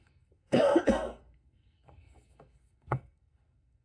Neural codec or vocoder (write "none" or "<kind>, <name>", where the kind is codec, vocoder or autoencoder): codec, SNAC